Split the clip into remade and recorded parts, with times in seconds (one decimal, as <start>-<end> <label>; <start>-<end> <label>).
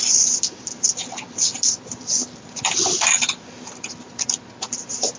0.0-5.2 recorded